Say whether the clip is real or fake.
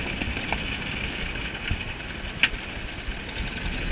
real